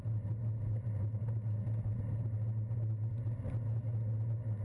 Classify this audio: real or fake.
real